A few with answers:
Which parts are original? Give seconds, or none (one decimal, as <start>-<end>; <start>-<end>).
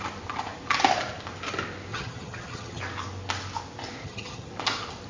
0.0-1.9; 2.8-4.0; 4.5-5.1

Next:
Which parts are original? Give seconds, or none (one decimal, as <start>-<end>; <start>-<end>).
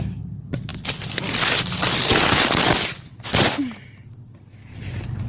0.7-3.9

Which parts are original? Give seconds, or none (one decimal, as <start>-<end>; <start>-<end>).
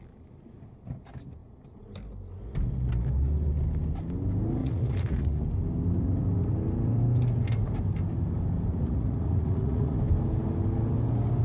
0.0-4.6; 5.4-8.7; 10.0-11.4